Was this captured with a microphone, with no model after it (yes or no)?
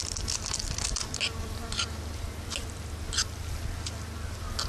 yes